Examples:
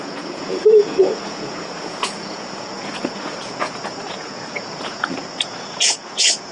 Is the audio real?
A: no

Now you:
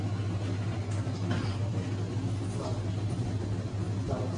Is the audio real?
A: yes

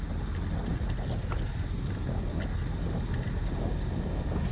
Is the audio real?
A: yes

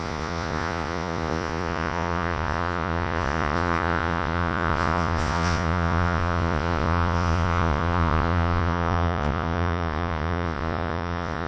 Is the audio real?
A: no